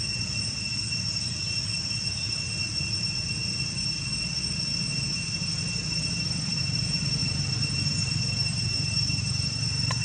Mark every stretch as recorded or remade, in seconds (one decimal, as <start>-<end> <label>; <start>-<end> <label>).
0.0-7.2 recorded; 7.2-9.6 remade; 9.6-10.0 recorded

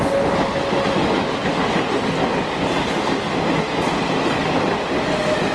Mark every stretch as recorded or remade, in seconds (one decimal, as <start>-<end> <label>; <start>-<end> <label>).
0.0-5.5 recorded

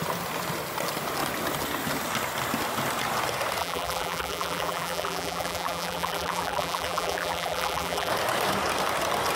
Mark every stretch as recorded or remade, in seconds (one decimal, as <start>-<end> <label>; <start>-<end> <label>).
0.0-3.6 recorded; 3.6-8.1 remade; 8.1-9.4 recorded

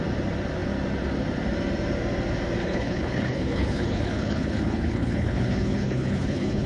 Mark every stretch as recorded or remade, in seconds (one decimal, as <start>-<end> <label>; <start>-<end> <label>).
0.0-2.6 recorded; 2.6-6.7 remade